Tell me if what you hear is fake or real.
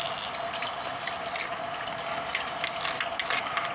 real